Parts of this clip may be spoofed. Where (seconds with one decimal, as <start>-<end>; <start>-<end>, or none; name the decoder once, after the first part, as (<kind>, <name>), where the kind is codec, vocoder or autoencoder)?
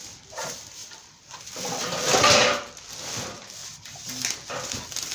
0.8-2.0 (vocoder, BigVGAN v2); 3.6-4.1